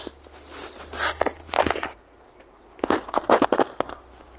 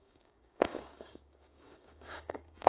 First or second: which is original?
first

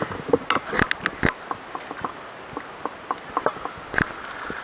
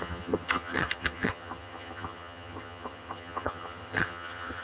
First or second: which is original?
first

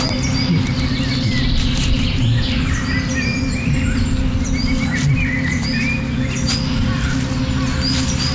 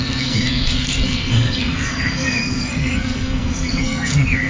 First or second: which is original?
first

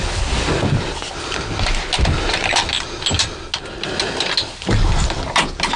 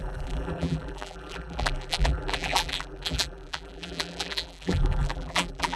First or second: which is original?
first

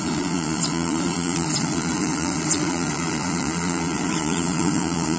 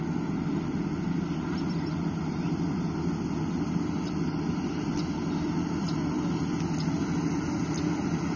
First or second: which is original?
second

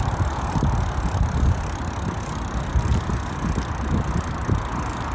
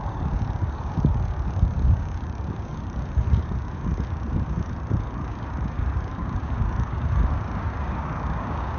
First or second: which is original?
first